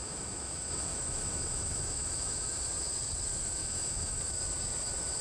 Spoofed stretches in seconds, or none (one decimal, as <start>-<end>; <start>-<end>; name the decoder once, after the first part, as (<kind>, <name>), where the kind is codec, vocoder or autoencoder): 0.0-2.6 (autoencoder, DAC-VAE); 3.6-4.2